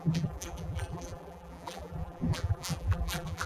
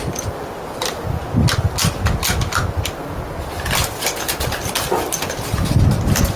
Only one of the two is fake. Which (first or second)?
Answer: first